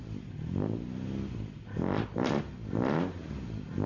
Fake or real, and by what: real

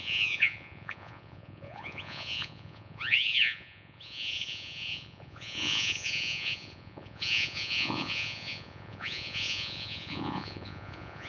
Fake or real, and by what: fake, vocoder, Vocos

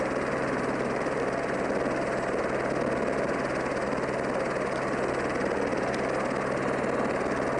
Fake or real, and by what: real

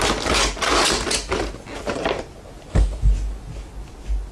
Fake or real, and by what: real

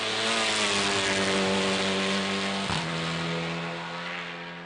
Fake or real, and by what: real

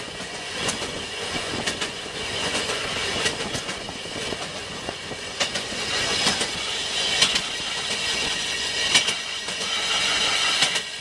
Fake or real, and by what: fake, vocoder, Vocos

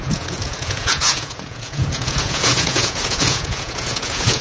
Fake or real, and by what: fake, vocoder, Vocos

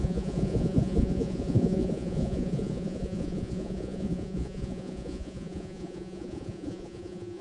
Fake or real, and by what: fake, vocoder, Vocos